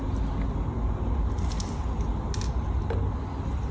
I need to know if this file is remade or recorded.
recorded